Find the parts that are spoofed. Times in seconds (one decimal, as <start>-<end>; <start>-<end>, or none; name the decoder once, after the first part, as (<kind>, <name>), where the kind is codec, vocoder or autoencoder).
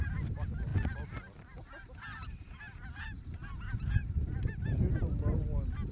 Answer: none